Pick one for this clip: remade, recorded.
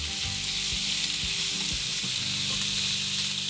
recorded